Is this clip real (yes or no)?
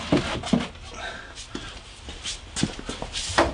yes